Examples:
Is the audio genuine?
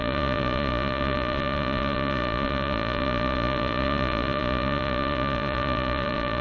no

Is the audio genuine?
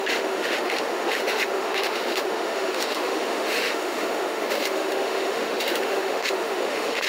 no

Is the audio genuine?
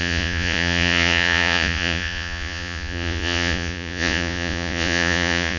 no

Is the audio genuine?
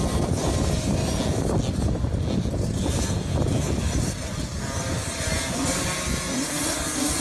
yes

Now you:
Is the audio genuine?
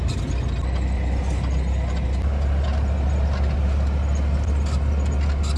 yes